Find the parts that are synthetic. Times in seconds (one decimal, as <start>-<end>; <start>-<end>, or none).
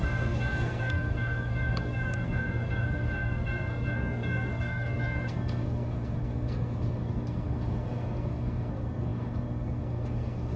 0.0-10.6